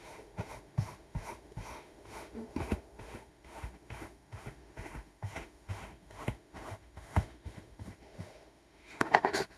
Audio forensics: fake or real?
fake